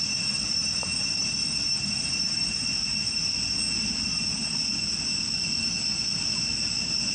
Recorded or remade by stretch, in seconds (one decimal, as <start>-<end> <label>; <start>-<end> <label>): 0.0-7.1 recorded